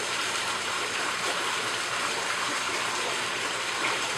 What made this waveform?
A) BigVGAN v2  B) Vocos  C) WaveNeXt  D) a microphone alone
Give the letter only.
A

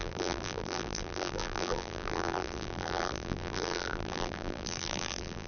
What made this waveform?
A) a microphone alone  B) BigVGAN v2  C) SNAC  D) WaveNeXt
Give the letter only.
B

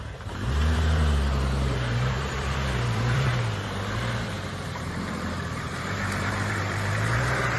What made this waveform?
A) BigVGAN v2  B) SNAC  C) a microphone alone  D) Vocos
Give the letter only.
A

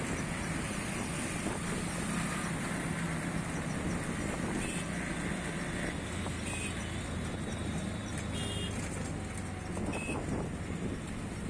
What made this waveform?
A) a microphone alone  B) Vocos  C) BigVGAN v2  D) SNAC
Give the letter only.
A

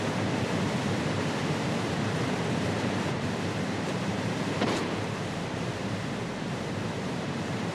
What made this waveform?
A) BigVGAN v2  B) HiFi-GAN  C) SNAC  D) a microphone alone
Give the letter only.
A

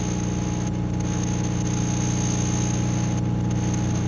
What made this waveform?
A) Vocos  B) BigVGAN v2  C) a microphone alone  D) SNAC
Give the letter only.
C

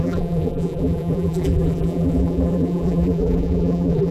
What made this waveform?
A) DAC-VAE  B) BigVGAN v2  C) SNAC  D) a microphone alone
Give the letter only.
B